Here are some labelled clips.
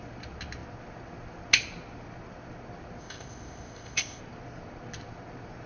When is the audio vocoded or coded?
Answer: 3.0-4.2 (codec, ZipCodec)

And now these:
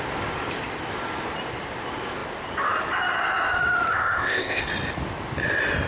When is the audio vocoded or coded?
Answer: 3.9-4.6 (codec, ZipCodec)

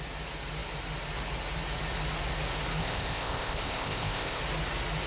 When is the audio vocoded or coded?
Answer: 2.8-4.4 (codec, ZipCodec)